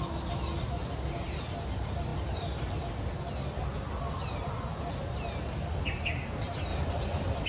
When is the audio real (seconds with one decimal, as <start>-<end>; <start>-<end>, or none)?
0.0-6.7

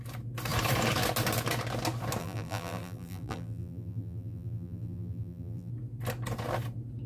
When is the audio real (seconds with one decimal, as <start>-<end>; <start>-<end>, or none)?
0.0-2.2; 5.7-7.1

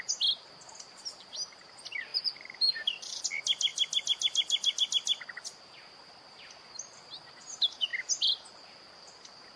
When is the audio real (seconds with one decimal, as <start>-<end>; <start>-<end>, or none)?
0.0-2.1; 3.2-7.9; 9.1-9.6

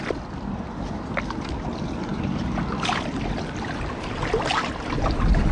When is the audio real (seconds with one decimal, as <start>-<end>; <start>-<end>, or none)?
0.0-2.1; 2.6-5.5

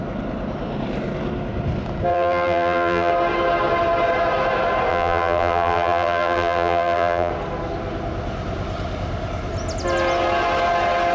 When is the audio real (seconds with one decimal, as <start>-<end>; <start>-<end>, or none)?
0.0-2.1; 3.1-4.9; 7.3-11.1